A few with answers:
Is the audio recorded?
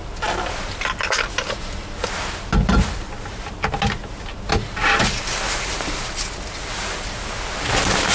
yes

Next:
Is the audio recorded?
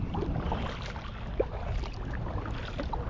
yes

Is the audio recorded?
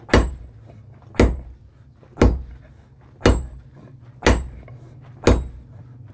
yes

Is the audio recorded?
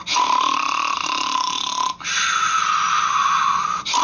yes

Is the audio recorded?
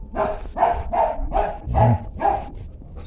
yes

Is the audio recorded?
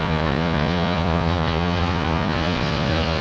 no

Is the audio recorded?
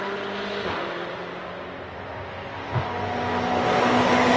yes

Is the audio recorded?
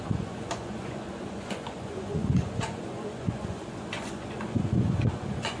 no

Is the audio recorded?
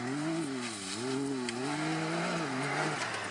yes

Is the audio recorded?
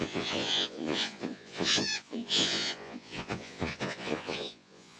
no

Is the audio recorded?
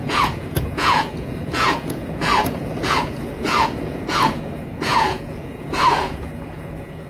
no